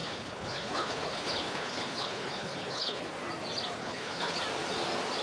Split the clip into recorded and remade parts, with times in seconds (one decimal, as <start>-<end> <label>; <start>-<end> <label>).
0.0-3.1 remade; 3.1-3.8 recorded; 3.8-4.4 remade; 4.4-5.2 recorded